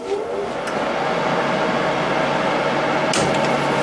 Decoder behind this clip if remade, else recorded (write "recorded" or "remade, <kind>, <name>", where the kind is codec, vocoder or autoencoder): recorded